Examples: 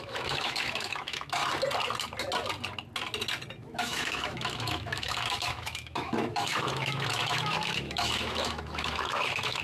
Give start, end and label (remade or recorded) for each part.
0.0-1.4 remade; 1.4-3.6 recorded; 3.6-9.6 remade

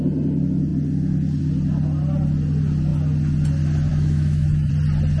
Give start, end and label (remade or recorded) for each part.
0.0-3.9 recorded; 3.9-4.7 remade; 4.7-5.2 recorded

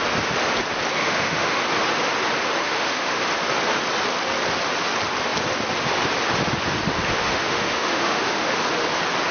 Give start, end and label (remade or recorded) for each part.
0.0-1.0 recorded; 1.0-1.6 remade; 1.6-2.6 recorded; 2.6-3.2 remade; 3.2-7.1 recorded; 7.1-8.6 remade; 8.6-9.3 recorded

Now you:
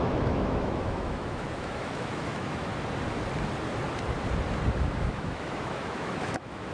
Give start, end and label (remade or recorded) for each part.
0.0-2.7 remade; 2.7-4.8 recorded; 4.8-6.7 remade

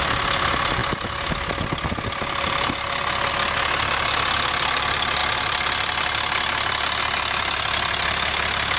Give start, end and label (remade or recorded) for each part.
0.0-8.8 recorded

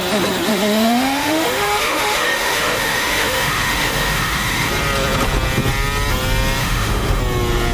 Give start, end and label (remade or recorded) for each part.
0.0-0.5 recorded; 0.5-4.7 remade; 4.7-6.6 recorded; 6.6-7.2 remade; 7.2-7.7 recorded

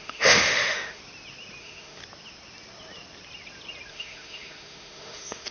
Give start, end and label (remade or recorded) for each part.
0.0-1.0 remade; 1.0-1.6 recorded; 1.6-2.0 remade; 2.0-3.9 recorded; 3.9-5.5 remade